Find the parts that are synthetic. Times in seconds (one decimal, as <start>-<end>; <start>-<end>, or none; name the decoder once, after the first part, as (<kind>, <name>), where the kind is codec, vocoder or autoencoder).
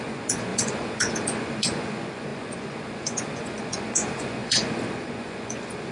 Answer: 0.0-5.9 (vocoder, Vocos)